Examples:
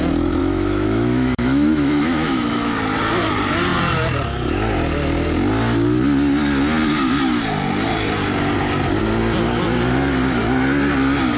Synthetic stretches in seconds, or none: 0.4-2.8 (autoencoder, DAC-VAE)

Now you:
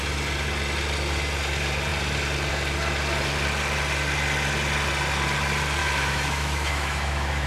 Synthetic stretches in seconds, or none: 5.8-7.5 (autoencoder, DAC-VAE)

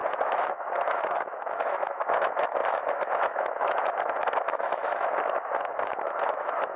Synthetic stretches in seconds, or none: 0.0-6.8 (autoencoder, DAC-VAE)

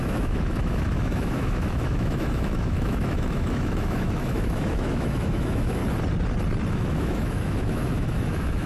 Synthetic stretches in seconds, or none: 0.0-5.8 (autoencoder, DAC-VAE); 6.7-8.7

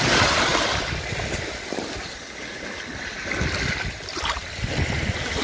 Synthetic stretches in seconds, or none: none

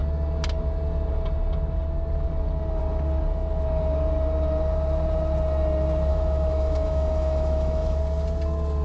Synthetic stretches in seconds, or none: 6.1-8.0 (autoencoder, DAC-VAE)

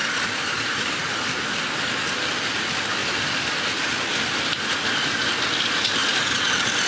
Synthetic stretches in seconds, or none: none